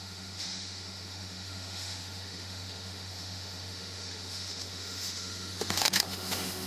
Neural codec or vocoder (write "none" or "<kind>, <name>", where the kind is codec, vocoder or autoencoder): autoencoder, DAC-VAE